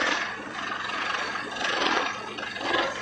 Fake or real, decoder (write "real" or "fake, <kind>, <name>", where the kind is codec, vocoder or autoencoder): fake, vocoder, Vocos